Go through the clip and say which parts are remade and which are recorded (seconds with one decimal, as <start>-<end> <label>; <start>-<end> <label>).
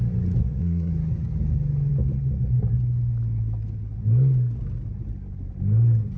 0.0-0.4 recorded; 0.4-0.9 remade; 0.9-6.2 recorded